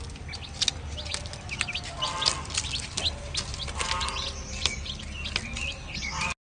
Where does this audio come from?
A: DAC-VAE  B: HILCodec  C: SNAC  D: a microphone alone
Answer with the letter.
D